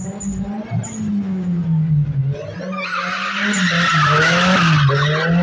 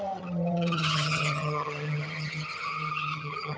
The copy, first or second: second